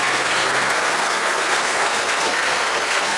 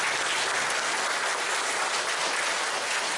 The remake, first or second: first